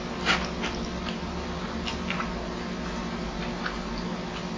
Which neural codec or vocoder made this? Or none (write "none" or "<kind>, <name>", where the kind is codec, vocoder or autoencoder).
none